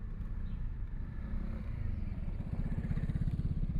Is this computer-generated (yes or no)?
no